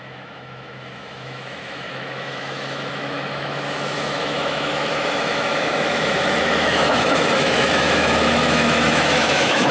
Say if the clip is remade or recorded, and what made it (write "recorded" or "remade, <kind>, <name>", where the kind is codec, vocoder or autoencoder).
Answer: remade, autoencoder, DAC-VAE